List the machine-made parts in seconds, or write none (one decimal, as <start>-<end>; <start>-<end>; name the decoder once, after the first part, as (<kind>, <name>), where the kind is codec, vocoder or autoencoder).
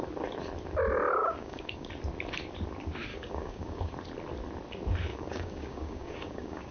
1.2-1.9 (codec, DAC); 3.1-3.9; 5.1-6.7